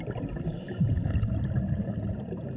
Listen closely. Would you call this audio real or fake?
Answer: real